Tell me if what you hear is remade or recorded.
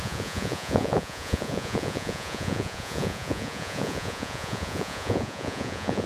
remade